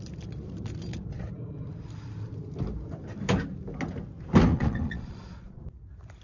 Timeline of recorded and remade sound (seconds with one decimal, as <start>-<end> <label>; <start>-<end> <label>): 0.0-4.5 recorded; 4.5-5.6 remade; 5.6-6.2 recorded